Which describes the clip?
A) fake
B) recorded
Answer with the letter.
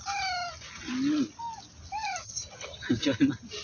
B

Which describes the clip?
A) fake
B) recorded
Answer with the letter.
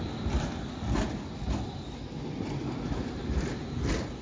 B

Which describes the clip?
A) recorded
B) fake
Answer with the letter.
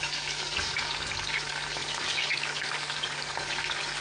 B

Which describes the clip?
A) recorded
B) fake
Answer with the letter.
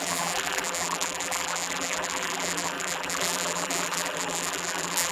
B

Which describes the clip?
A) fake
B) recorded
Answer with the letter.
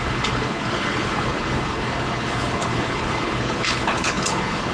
A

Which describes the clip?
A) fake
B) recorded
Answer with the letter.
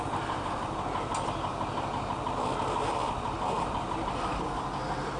B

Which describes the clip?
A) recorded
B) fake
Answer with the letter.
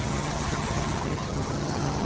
B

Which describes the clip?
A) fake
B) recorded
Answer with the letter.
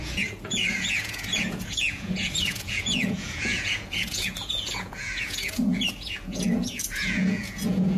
A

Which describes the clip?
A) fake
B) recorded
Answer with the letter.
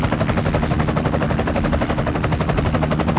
B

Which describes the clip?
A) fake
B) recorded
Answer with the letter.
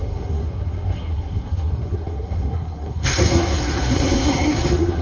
A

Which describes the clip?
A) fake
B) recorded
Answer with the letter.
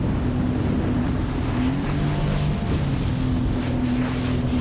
B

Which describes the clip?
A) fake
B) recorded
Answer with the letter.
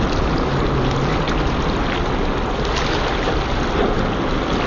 B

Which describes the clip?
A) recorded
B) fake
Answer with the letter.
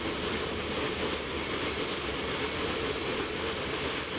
A